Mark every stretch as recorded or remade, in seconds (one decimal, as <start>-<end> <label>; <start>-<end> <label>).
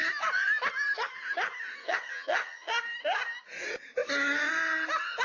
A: 0.0-1.8 recorded; 1.8-2.7 remade; 2.7-5.2 recorded